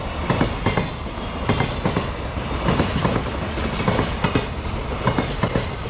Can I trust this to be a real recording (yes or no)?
yes